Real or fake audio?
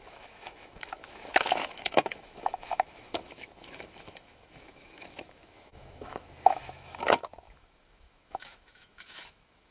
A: fake